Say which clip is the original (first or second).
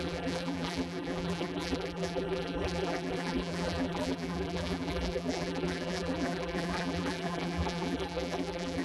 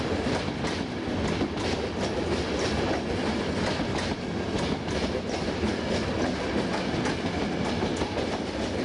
second